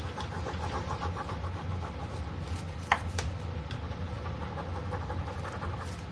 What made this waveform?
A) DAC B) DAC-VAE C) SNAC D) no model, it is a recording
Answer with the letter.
D